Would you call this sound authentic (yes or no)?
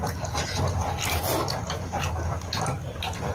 yes